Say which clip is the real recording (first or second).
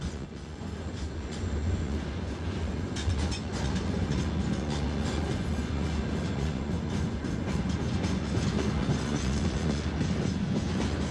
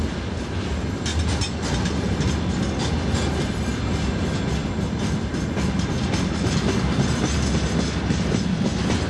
second